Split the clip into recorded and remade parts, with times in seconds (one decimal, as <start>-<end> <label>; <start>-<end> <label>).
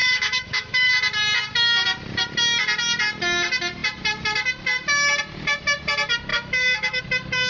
0.0-0.9 remade; 0.9-6.3 recorded; 6.3-7.0 remade; 7.0-7.5 recorded